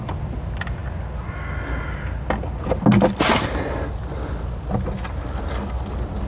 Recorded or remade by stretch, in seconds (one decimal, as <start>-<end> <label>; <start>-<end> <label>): 0.0-6.3 recorded